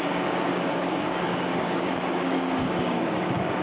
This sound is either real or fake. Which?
fake